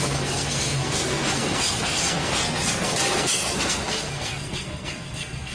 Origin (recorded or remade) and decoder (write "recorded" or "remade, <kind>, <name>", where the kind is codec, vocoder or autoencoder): remade, codec, SNAC